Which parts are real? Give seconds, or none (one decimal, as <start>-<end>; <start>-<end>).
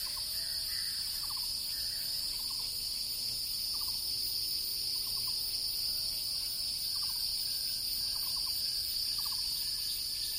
0.0-4.7; 5.4-7.3; 8.6-10.4